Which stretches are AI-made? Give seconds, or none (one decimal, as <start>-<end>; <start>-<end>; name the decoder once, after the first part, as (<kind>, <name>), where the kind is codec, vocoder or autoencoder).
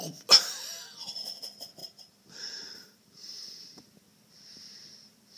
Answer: 1.8-3.8 (vocoder, BigVGAN v2)